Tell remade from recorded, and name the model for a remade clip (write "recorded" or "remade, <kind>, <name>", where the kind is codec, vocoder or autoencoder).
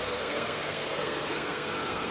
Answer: remade, codec, SNAC